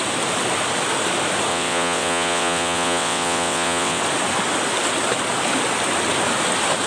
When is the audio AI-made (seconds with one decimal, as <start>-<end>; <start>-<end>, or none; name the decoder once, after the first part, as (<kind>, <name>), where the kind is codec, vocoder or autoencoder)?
1.5-4.0 (vocoder, WaveNeXt)